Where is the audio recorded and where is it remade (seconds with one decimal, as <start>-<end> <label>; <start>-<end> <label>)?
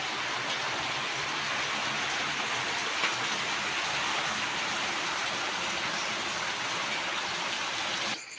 0.0-8.4 recorded